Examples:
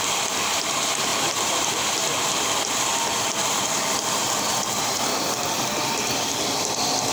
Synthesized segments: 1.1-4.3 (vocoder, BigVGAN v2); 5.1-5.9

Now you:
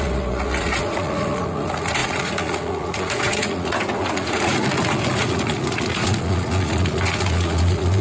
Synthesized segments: 0.0-8.0 (vocoder, Vocos)

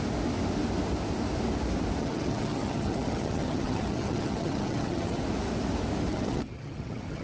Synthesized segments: 2.0-5.2 (vocoder, HiFi-GAN); 6.1-7.2

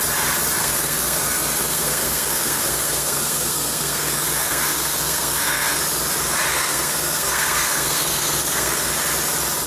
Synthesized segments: 0.6-5.8 (codec, SNAC); 6.5-8.9

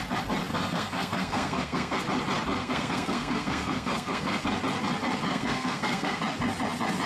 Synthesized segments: 0.5-2.0 (codec, SNAC); 2.6-4.4; 5.3-6.2

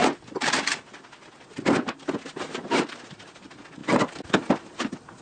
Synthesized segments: none

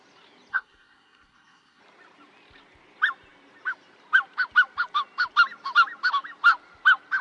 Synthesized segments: 0.5-1.8 (codec, SNAC)

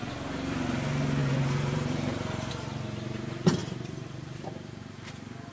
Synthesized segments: 1.2-2.5 (vocoder, BigVGAN v2); 3.6-5.1